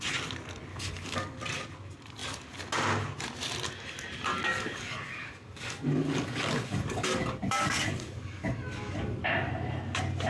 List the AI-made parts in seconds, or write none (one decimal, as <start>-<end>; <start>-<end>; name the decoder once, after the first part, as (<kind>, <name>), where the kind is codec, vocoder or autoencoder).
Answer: 0.7-1.4 (codec, DAC); 4.3-9.5